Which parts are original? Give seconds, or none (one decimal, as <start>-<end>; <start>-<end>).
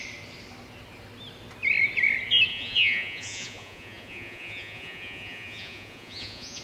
0.0-2.5